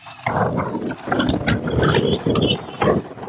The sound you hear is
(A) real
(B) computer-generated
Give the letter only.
A